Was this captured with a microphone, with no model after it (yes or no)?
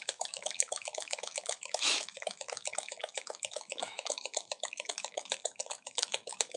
no